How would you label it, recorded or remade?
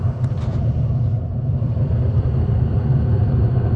remade